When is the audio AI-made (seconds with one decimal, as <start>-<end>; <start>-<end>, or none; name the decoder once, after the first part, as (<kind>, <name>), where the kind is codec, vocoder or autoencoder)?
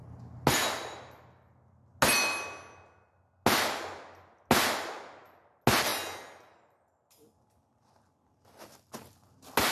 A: none